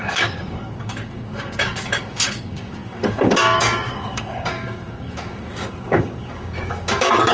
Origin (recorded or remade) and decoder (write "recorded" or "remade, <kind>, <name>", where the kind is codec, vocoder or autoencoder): remade, codec, DAC